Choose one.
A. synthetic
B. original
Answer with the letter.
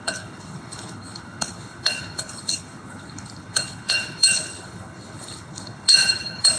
A